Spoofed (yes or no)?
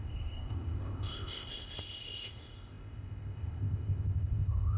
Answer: yes